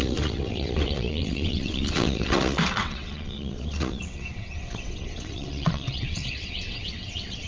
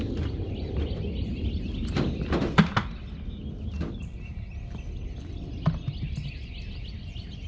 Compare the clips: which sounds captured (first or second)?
second